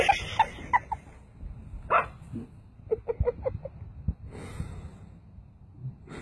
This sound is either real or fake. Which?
real